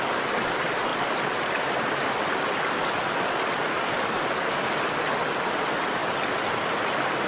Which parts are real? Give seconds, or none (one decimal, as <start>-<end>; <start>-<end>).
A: 0.0-0.9; 4.3-7.3